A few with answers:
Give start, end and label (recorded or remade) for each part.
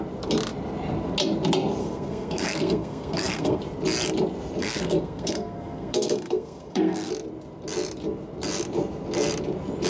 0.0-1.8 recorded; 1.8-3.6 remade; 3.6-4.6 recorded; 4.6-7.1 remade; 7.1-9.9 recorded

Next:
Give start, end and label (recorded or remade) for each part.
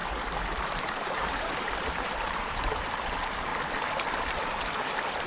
0.0-3.5 remade; 3.5-4.5 recorded; 4.5-5.3 remade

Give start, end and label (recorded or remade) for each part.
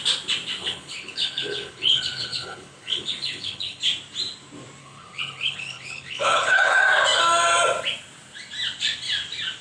0.0-0.6 recorded; 0.6-3.8 remade; 3.8-4.8 recorded; 4.8-6.8 remade; 6.8-9.6 recorded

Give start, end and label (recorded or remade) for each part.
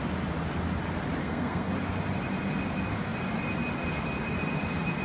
0.0-1.2 recorded; 1.2-1.7 remade; 1.7-5.0 recorded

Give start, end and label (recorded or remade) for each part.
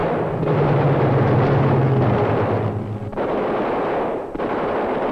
0.0-5.1 recorded